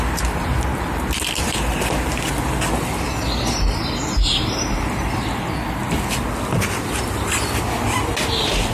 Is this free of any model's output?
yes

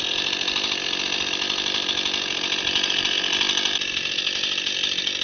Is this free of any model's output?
yes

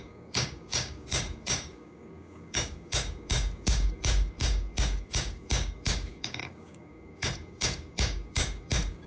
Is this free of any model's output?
no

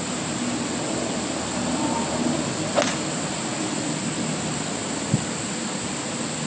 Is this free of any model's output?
yes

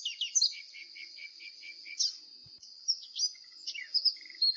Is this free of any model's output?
yes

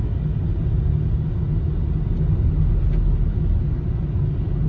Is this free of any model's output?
yes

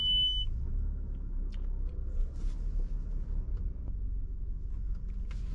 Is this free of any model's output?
yes